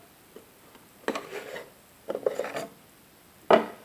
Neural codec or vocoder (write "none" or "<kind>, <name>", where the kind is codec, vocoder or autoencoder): none